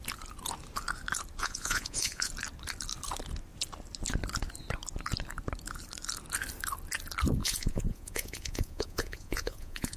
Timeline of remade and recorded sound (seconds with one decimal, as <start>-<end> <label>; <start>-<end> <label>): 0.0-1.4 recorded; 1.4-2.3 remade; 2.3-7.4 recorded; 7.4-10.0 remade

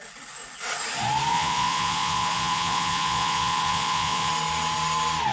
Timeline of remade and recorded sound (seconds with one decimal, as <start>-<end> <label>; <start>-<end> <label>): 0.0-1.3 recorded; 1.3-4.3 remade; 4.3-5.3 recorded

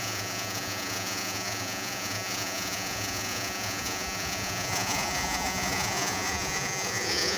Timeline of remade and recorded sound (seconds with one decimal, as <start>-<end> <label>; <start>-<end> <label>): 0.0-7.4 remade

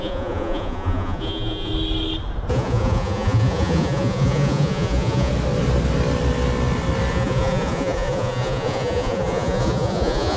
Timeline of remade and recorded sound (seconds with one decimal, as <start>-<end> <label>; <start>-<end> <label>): 0.0-1.7 remade; 1.7-2.5 recorded; 2.5-5.3 remade; 5.3-7.1 recorded; 7.1-10.4 remade